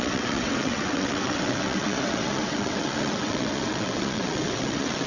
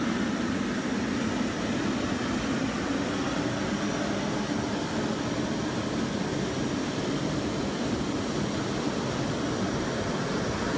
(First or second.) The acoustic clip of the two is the second